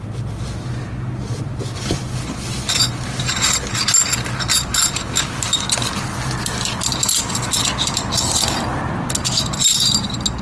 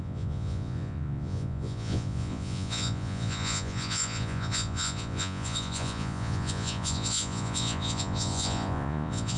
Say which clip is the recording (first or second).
first